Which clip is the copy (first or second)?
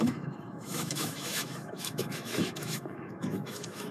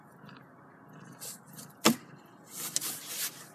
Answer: first